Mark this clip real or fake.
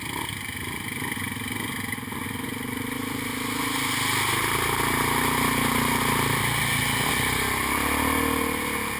real